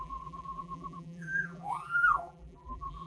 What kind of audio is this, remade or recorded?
remade